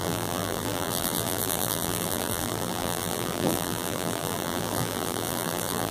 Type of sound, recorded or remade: remade